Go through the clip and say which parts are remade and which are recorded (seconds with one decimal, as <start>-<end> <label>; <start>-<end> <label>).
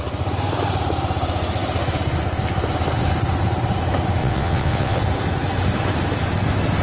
0.0-4.2 recorded; 4.2-5.0 remade; 5.0-6.8 recorded